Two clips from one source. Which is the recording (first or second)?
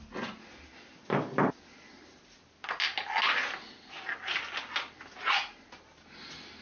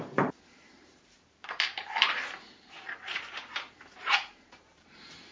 first